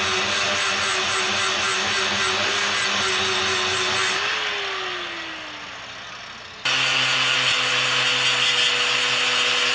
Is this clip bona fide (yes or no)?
yes